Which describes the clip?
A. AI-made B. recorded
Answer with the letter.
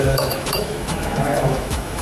A